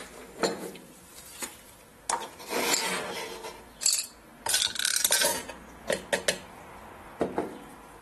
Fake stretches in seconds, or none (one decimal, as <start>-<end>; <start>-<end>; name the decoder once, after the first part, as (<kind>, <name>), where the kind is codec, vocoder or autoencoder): none